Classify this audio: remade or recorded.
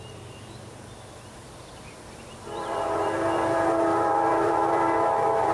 remade